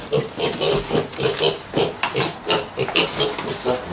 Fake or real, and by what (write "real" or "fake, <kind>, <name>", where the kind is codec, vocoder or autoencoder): real